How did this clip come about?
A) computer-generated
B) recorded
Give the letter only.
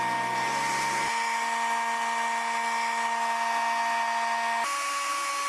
B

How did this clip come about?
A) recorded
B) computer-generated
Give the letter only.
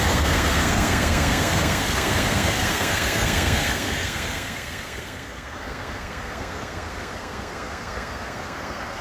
B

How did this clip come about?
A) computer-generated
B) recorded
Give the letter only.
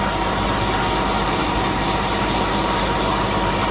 B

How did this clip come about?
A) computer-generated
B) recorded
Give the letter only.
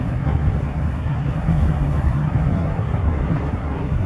A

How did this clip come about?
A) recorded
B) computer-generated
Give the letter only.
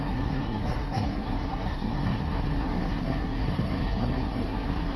B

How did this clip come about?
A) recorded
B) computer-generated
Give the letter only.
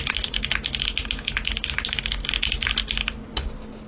A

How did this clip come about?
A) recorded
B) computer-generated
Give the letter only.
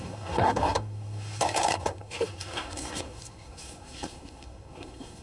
B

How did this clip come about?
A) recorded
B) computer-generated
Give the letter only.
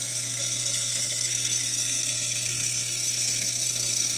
B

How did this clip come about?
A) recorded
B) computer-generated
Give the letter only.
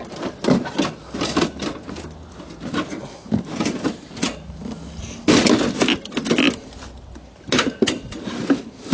A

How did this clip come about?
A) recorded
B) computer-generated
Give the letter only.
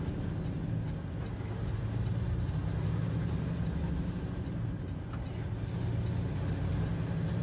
A